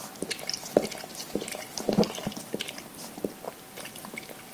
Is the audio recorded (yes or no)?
yes